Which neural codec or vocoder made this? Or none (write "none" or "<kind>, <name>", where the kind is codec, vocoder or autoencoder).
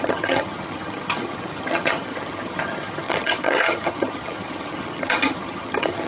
vocoder, HiFi-GAN